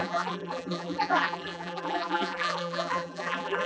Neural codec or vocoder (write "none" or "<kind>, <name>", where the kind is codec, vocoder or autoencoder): vocoder, BigVGAN v2